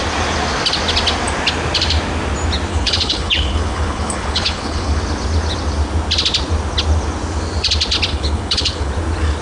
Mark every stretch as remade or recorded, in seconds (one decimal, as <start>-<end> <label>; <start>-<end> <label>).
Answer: 0.0-2.7 recorded; 2.7-5.0 remade; 5.0-8.1 recorded; 8.1-8.9 remade; 8.9-9.4 recorded